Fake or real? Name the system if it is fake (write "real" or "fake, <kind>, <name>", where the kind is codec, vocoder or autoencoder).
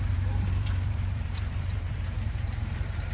fake, vocoder, BigVGAN v2